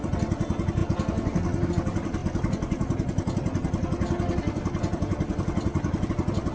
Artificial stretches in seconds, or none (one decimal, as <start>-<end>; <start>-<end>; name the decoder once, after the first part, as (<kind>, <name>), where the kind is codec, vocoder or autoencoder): none